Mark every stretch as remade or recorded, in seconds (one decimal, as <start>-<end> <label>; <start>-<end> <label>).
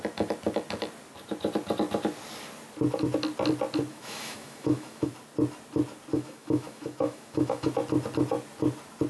0.0-3.9 recorded; 3.9-5.1 remade; 5.1-6.1 recorded; 6.1-7.7 remade; 7.7-9.1 recorded